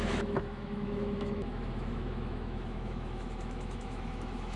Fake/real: fake